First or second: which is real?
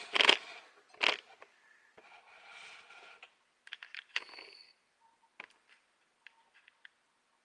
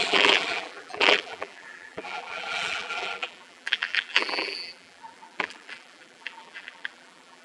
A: first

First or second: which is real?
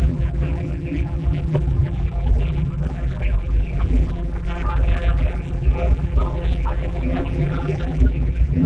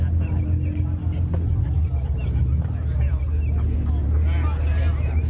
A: second